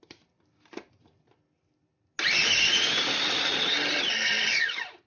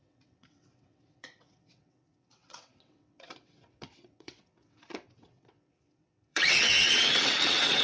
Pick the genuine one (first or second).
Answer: first